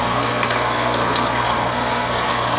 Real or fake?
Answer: fake